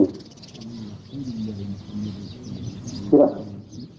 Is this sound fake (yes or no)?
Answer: no